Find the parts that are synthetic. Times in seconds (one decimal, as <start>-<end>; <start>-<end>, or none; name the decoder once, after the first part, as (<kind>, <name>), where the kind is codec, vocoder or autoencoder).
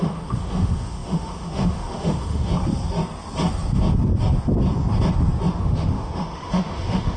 0.0-2.5 (autoencoder, DAC-VAE); 5.6-7.2